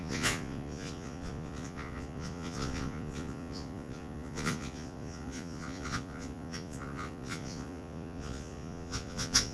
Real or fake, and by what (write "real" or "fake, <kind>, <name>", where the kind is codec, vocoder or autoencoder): fake, vocoder, Vocos